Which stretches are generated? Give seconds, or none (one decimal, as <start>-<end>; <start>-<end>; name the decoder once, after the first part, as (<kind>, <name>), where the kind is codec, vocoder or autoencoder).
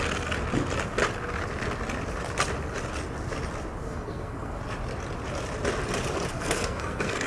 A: 3.8-4.6 (codec, SNAC); 6.3-7.3